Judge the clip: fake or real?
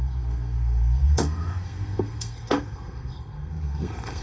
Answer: fake